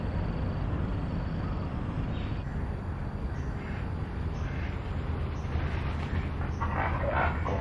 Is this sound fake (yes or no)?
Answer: no